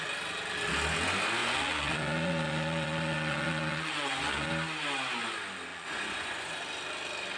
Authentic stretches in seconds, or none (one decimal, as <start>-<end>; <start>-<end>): 0.0-1.4; 4.5-5.7; 6.6-7.4